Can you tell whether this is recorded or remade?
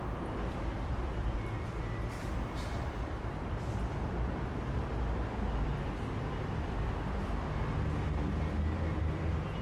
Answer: remade